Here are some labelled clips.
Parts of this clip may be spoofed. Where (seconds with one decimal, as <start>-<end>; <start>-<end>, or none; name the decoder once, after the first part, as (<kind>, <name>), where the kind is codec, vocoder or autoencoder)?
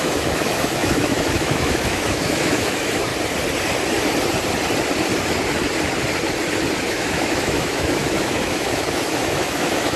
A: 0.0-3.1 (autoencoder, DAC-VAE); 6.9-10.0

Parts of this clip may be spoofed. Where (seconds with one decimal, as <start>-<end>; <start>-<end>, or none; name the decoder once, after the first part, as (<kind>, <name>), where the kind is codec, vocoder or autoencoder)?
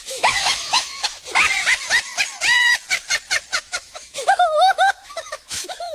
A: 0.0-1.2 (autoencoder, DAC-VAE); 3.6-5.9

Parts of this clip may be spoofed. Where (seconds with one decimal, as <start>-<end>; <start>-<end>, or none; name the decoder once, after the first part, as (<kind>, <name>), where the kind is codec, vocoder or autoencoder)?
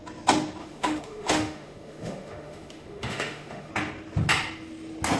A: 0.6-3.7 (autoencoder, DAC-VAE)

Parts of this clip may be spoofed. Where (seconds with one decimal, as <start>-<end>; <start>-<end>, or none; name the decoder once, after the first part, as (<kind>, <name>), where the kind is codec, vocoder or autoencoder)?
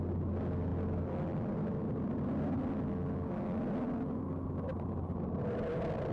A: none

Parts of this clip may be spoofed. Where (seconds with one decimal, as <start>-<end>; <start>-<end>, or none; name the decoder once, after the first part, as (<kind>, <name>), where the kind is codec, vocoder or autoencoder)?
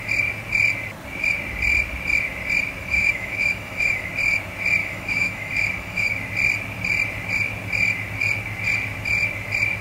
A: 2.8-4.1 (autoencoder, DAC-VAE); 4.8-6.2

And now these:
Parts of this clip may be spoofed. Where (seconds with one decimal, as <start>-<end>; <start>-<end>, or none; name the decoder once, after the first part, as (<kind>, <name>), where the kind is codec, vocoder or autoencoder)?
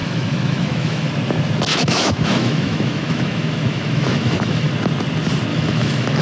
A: 0.0-1.1 (autoencoder, DAC-VAE); 1.7-4.7; 5.5-6.2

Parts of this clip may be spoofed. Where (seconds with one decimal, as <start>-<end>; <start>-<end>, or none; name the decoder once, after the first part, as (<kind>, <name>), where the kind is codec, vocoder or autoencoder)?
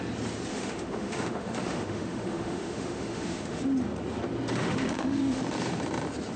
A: 0.5-3.6 (autoencoder, DAC-VAE); 4.6-5.4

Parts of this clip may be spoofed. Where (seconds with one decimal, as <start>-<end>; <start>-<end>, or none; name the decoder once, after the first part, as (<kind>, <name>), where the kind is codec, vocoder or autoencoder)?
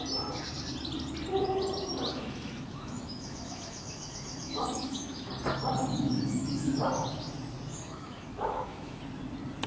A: 2.1-5.3 (autoencoder, DAC-VAE); 5.9-6.8; 7.7-9.0